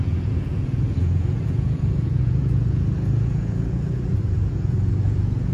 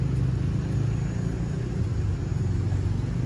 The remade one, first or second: first